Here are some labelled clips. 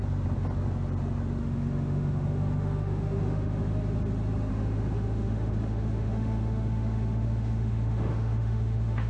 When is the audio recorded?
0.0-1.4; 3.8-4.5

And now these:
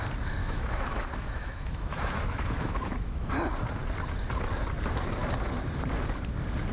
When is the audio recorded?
0.0-0.4; 3.3-6.7